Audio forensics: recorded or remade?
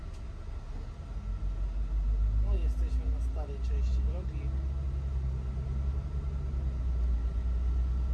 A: recorded